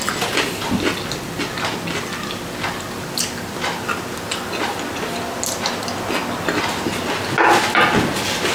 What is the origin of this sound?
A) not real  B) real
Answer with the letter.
B